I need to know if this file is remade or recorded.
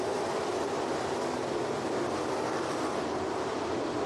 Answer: recorded